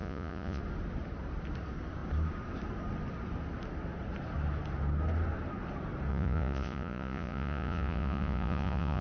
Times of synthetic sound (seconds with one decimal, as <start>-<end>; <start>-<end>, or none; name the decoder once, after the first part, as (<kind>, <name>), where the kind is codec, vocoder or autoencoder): 0.0-0.6 (vocoder, Vocos); 6.1-9.0